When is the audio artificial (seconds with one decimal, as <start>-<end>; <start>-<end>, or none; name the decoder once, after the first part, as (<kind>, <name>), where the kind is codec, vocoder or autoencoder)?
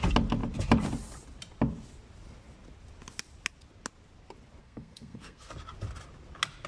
4.6-5.5 (codec, SNAC)